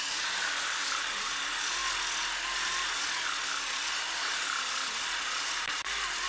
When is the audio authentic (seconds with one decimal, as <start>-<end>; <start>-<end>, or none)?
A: 0.0-6.3